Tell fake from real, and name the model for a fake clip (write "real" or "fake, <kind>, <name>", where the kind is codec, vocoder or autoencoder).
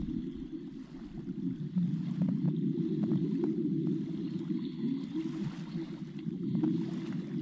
fake, vocoder, BigVGAN v2